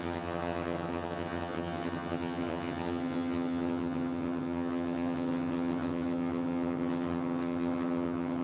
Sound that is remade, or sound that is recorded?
remade